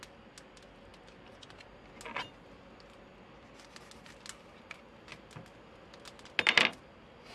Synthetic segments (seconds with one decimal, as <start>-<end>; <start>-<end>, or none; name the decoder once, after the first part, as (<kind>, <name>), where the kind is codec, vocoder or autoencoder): none